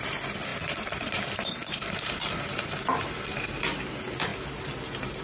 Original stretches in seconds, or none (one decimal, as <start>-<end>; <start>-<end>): 0.0-0.5; 3.6-5.2